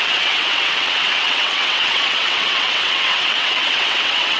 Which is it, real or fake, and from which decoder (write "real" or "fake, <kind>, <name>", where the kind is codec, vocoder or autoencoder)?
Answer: fake, vocoder, WaveNeXt